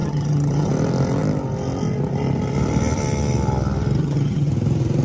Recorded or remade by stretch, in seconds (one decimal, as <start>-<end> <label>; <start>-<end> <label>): 0.0-0.7 remade; 0.7-4.0 recorded; 4.0-4.5 remade; 4.5-5.0 recorded

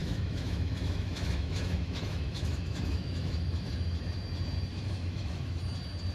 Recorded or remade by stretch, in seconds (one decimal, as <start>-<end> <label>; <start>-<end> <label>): 0.0-3.7 remade; 3.7-4.7 recorded; 4.7-5.6 remade; 5.6-6.1 recorded

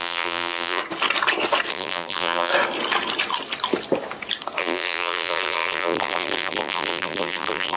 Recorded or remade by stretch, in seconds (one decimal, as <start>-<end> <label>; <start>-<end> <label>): 0.0-0.8 remade; 0.8-1.7 recorded; 1.7-2.5 remade; 2.5-4.6 recorded; 4.6-7.8 remade

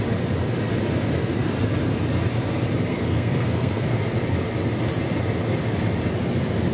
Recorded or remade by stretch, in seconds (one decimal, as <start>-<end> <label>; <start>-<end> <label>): 0.0-2.9 recorded; 2.9-3.9 remade; 3.9-6.7 recorded

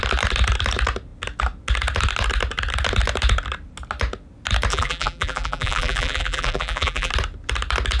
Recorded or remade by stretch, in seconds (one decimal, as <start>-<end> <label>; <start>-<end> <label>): 0.0-4.7 recorded; 4.7-7.1 remade; 7.1-8.0 recorded

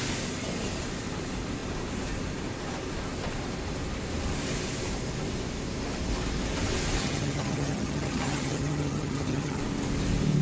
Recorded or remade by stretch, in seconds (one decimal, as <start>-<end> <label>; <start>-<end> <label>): 0.0-7.0 recorded; 7.0-9.6 remade; 9.6-10.4 recorded